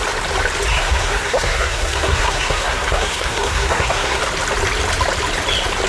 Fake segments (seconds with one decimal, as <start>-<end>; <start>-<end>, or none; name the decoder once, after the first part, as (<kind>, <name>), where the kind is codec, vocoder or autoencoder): 0.7-4.2 (codec, SNAC)